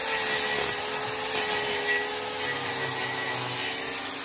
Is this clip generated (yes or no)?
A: no